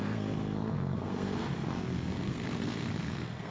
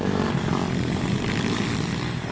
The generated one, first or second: first